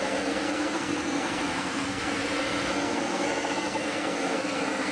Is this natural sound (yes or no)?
no